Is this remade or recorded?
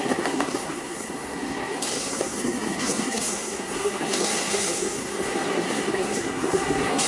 remade